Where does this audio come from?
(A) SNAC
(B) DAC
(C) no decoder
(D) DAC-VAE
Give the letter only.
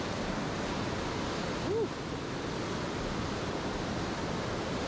C